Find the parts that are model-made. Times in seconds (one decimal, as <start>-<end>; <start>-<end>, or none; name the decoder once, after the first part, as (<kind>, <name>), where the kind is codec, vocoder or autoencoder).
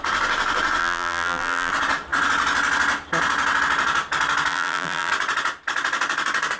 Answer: 0.8-1.7 (vocoder, BigVGAN v2); 4.5-5.1